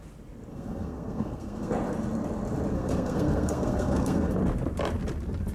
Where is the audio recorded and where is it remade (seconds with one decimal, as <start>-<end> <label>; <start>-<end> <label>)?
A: 0.0-0.5 recorded; 0.5-1.7 remade; 1.7-2.7 recorded; 2.7-4.4 remade; 4.4-5.5 recorded